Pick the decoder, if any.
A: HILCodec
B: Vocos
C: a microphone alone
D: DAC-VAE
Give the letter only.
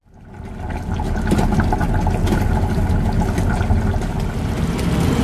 C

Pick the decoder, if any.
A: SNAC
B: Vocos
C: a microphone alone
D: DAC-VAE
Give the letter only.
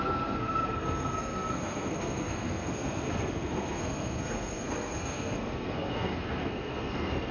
A